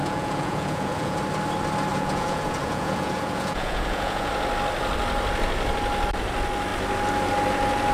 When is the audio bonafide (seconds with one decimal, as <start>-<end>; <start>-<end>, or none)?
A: 1.2-1.9; 4.3-7.9